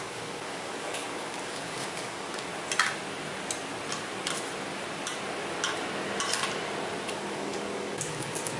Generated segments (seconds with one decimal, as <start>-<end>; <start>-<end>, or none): 0.0-2.5; 7.1-8.6